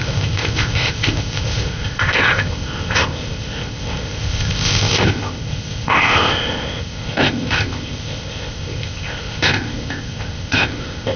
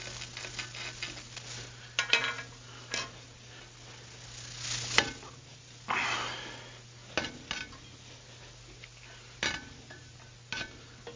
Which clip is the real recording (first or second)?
second